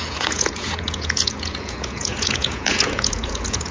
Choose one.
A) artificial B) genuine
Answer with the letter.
A